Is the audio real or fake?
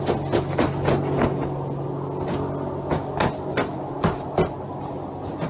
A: real